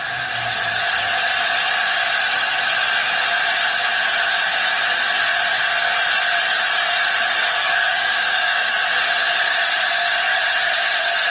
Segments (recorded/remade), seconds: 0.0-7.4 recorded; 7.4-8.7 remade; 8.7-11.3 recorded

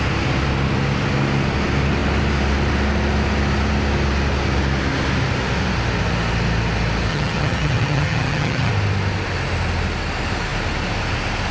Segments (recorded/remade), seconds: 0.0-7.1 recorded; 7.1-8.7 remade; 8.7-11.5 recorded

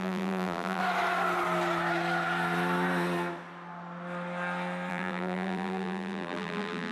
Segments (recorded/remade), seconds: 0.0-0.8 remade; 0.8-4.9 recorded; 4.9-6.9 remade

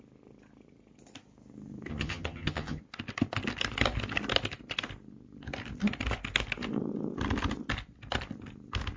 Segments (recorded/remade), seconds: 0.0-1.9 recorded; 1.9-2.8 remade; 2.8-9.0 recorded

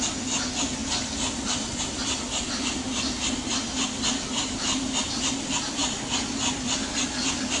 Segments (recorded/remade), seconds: 0.0-7.6 recorded

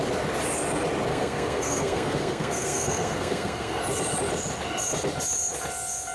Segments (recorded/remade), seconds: 0.0-1.1 recorded; 1.1-3.8 remade; 3.8-6.1 recorded

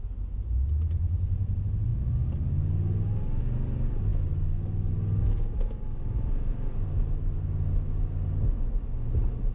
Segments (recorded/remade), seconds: 0.0-9.5 recorded